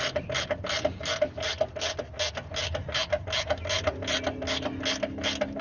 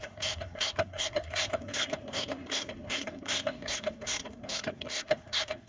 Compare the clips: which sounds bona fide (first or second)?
first